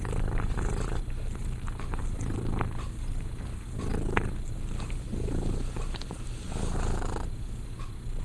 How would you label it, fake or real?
real